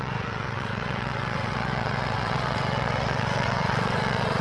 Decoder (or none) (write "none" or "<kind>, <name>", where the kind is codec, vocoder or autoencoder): vocoder, WaveNeXt